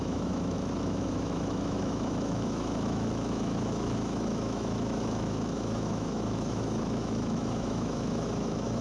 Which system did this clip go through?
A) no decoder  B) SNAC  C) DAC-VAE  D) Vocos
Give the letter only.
C